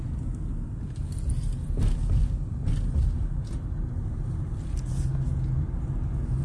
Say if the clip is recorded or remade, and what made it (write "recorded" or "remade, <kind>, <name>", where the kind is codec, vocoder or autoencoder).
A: recorded